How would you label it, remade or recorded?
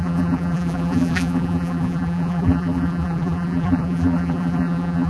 remade